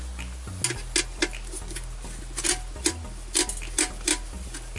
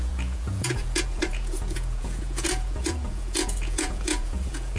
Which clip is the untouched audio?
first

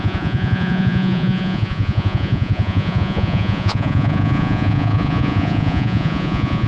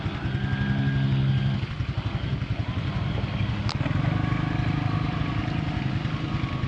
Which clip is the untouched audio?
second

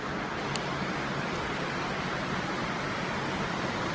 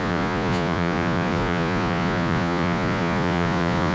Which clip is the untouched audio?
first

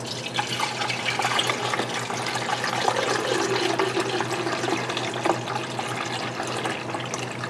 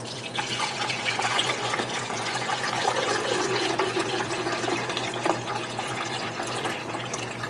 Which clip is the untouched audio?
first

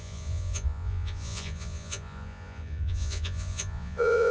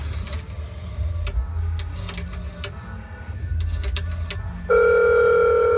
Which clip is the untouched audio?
second